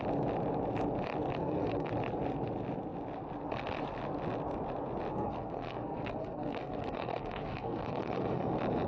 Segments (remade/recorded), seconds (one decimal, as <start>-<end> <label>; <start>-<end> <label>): 0.0-1.4 recorded; 1.4-1.9 remade; 1.9-5.1 recorded; 5.1-8.5 remade; 8.5-8.9 recorded